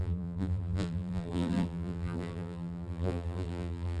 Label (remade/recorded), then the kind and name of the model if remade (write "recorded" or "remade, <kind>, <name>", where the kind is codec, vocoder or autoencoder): remade, vocoder, BigVGAN v2